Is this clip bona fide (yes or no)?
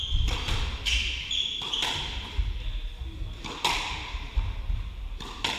yes